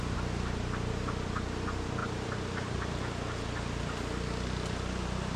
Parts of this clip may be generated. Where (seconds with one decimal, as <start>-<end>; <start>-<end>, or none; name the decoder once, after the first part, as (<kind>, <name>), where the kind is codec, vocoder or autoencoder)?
2.0-3.0 (vocoder, BigVGAN v2)